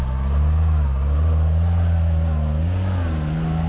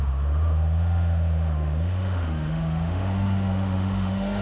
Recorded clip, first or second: first